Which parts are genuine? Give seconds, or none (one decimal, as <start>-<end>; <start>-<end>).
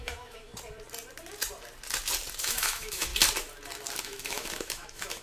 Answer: 0.5-2.4; 3.1-4.0